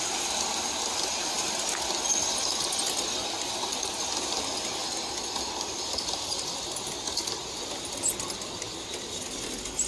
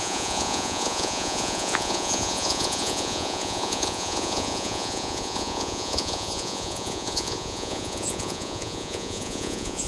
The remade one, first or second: second